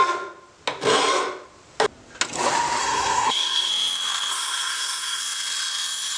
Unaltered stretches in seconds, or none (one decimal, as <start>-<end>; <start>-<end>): 0.0-2.8; 3.7-4.3; 5.2-6.2